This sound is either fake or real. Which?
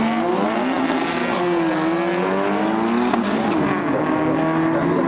real